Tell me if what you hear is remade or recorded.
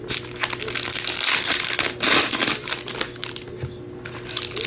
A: recorded